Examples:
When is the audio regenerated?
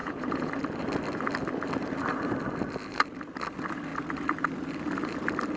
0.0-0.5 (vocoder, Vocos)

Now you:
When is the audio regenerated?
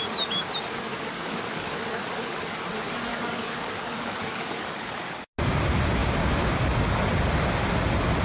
0.9-2.6 (codec, DAC); 3.1-5.3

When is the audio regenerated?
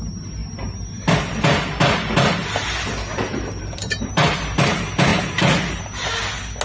3.1-4.1 (vocoder, BigVGAN v2); 5.1-5.8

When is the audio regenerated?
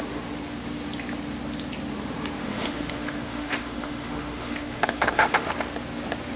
2.4-5.5 (autoencoder, DAC-VAE)